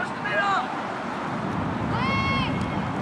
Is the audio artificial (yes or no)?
no